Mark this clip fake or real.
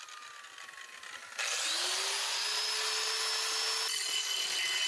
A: real